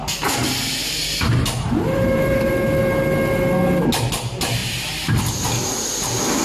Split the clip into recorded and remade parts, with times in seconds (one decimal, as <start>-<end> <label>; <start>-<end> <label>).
0.0-0.8 recorded; 0.8-2.5 remade; 2.5-4.6 recorded; 4.6-5.2 remade; 5.2-6.4 recorded